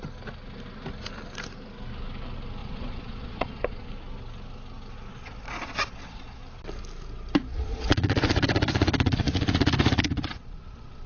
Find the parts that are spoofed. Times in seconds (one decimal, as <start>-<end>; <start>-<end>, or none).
2.6-3.9; 5.1-6.4; 7.5-11.1